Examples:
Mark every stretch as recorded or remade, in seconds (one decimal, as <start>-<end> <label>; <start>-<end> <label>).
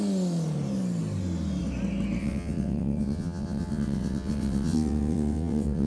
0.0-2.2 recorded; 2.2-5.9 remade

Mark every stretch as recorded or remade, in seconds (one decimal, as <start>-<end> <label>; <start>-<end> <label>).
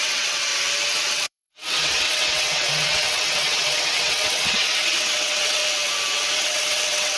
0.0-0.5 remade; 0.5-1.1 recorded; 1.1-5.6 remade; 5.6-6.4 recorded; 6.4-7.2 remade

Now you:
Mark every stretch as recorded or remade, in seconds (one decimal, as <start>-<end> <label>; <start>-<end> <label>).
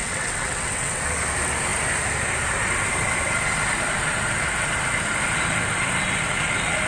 0.0-1.0 remade; 1.0-6.9 recorded